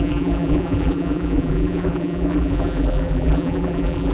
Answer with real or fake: fake